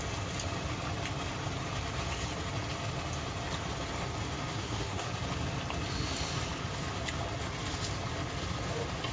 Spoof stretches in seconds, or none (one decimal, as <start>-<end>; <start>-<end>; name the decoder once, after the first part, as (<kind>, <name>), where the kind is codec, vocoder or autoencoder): 4.5-5.1 (codec, SNAC)